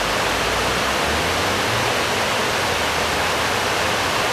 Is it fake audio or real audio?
real